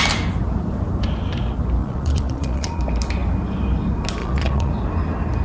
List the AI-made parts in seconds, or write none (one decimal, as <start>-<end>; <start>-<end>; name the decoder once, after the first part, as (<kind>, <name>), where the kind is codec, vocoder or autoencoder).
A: 1.8-2.8 (vocoder, Vocos); 4.2-4.7